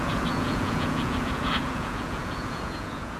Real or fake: fake